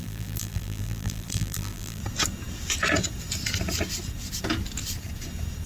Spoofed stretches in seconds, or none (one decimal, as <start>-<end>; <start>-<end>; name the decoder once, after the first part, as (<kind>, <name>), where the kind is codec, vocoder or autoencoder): 0.0-2.0 (vocoder, BigVGAN v2)